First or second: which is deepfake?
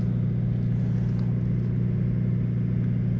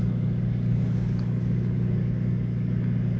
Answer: second